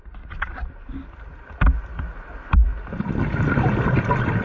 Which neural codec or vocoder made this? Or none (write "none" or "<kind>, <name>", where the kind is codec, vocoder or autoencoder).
none